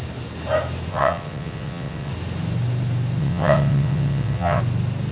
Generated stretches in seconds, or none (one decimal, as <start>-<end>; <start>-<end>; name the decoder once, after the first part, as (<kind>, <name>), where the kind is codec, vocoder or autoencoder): 0.9-2.1 (vocoder, WaveNeXt); 3.2-4.6